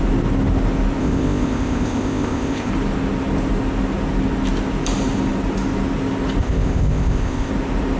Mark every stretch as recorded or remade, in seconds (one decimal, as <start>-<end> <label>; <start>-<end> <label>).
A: 0.0-1.0 recorded; 1.0-2.7 remade; 2.7-6.4 recorded; 6.4-7.5 remade; 7.5-8.0 recorded